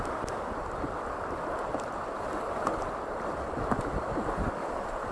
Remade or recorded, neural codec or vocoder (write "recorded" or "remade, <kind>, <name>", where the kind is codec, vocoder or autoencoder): recorded